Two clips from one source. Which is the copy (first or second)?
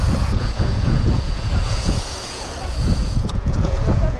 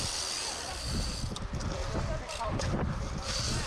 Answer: first